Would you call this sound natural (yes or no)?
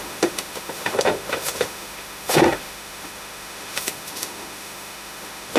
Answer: no